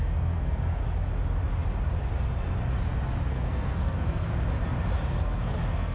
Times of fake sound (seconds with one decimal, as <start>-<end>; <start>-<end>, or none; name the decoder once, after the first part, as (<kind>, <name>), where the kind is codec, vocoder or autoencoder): 0.0-0.8 (codec, SNAC); 3.3-4.3; 5.2-5.9